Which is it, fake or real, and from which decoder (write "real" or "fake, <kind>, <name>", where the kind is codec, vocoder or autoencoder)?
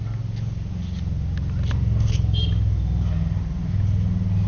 real